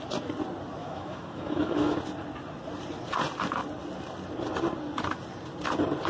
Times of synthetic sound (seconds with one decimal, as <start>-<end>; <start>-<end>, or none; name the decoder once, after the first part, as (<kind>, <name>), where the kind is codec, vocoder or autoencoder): 0.8-2.0 (autoencoder, DAC-VAE)

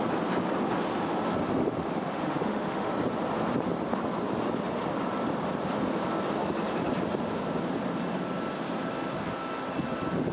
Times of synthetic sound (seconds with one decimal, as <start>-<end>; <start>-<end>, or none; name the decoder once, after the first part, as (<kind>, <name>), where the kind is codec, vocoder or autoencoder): 1.6-2.9 (autoencoder, DAC-VAE)

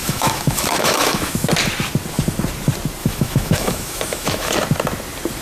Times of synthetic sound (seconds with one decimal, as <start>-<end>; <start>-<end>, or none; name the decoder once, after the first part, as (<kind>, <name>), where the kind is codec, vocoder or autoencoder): 0.0-1.5 (autoencoder, DAC-VAE); 3.0-4.5

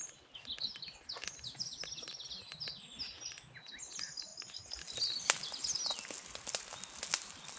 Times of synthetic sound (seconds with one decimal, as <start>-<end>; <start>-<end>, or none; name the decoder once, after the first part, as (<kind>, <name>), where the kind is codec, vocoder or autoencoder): none

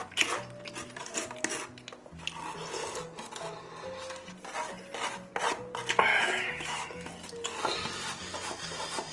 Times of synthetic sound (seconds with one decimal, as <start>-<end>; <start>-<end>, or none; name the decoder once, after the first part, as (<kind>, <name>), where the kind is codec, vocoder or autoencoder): 6.1-7.1 (autoencoder, DAC-VAE)